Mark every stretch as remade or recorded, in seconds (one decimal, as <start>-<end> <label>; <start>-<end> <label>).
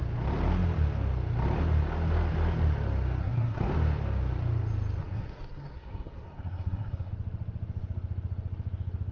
0.0-3.2 recorded; 3.2-3.7 remade; 3.7-5.0 recorded; 5.0-7.1 remade; 7.1-9.1 recorded